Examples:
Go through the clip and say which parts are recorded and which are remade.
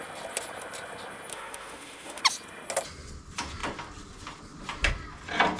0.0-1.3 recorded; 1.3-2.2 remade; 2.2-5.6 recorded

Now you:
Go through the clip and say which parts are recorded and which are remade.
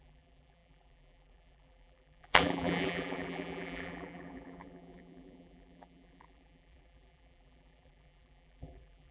0.0-9.1 remade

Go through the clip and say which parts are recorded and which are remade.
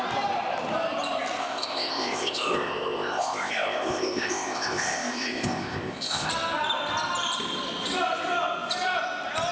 0.0-1.4 recorded; 1.4-6.3 remade; 6.3-9.5 recorded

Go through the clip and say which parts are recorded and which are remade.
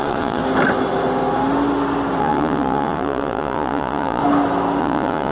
0.0-0.4 remade; 0.4-2.2 recorded; 2.2-4.2 remade; 4.2-4.8 recorded; 4.8-5.3 remade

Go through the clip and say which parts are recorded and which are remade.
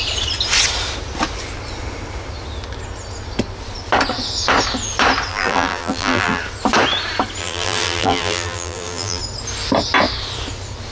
0.0-5.3 recorded; 5.3-6.4 remade; 6.4-7.4 recorded; 7.4-9.2 remade; 9.2-10.9 recorded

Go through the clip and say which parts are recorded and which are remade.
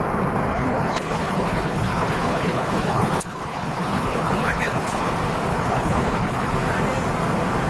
0.0-0.5 recorded; 0.5-5.1 remade; 5.1-5.5 recorded; 5.5-6.5 remade; 6.5-7.7 recorded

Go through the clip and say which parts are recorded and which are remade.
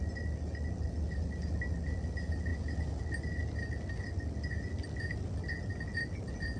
0.0-6.6 recorded